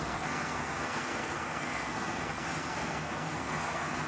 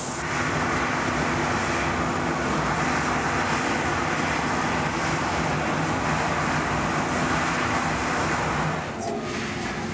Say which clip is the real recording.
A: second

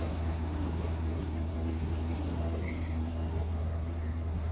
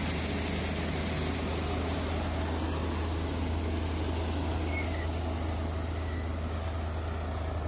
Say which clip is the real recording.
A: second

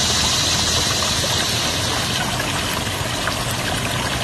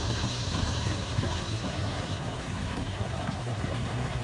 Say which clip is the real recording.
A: first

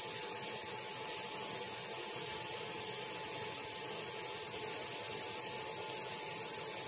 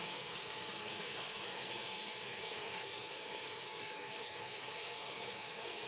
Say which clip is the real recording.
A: first